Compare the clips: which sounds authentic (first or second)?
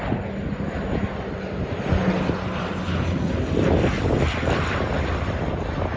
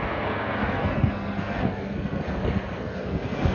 first